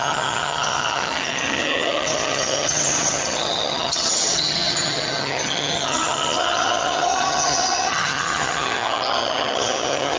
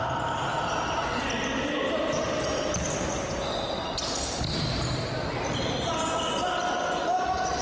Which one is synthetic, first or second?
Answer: first